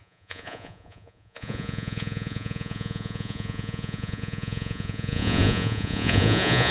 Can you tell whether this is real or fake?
fake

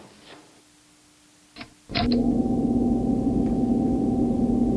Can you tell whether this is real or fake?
real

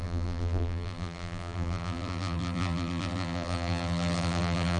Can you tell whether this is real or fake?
fake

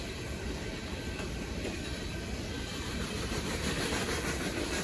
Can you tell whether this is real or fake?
fake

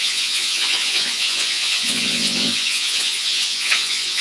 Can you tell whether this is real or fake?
fake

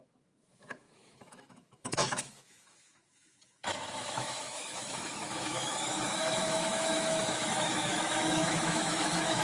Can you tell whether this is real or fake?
fake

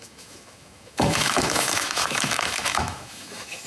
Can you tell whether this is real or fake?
fake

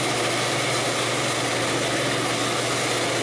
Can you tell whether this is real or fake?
real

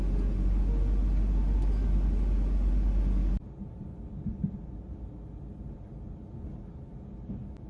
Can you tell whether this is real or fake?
real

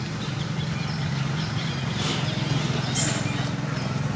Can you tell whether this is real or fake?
real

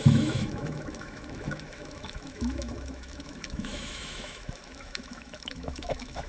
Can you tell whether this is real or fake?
fake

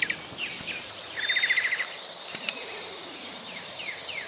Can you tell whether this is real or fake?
real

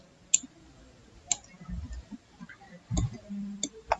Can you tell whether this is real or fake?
real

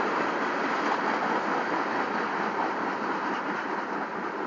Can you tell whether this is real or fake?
real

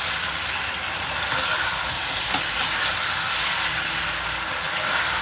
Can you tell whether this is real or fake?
real